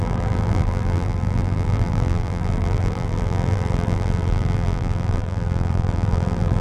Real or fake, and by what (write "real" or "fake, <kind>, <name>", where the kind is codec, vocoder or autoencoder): fake, vocoder, BigVGAN v2